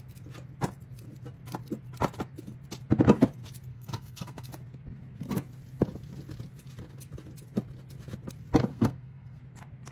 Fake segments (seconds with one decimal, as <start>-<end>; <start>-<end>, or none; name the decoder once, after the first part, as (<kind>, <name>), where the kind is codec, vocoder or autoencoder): 3.7-4.5 (codec, SNAC); 8.7-9.4